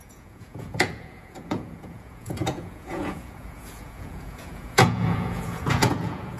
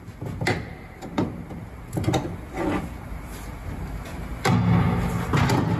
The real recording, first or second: second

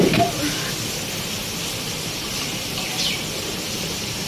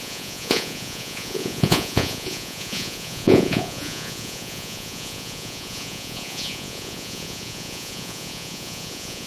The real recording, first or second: first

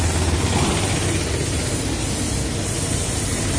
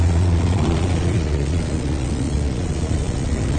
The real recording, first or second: first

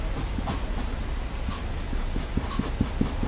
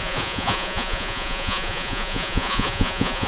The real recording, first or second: first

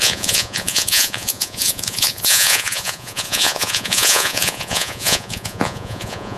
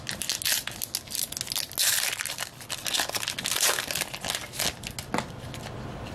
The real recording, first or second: second